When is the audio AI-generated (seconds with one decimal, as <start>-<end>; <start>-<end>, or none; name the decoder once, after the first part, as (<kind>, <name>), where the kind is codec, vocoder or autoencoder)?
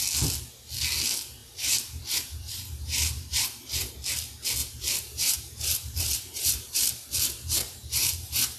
1.4-3.9 (vocoder, BigVGAN v2); 4.6-8.6